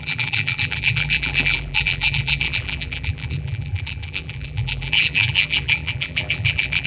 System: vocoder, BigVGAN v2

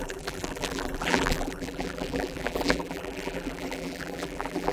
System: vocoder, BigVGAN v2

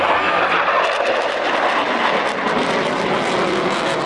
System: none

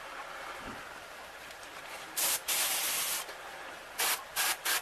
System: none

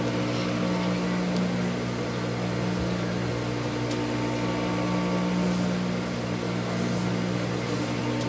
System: none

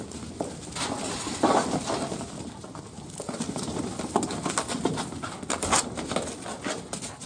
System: none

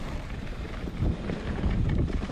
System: vocoder, BigVGAN v2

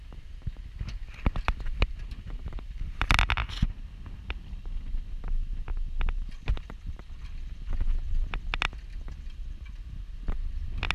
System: none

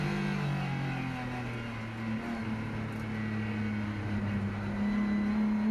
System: none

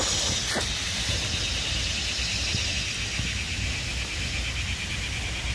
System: none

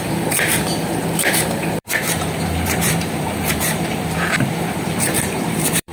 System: vocoder, BigVGAN v2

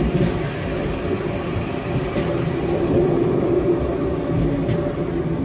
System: none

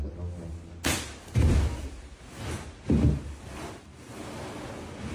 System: none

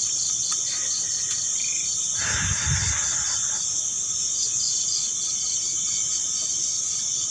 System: none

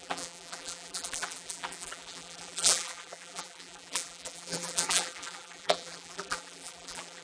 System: vocoder, BigVGAN v2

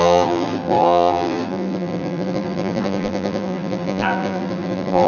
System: vocoder, BigVGAN v2